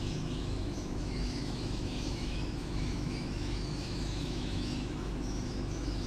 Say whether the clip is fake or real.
fake